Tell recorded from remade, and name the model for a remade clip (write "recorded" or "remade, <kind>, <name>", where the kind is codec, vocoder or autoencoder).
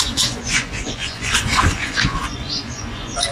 remade, vocoder, Vocos